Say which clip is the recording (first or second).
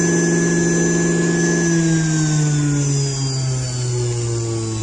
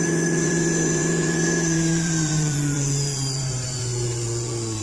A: first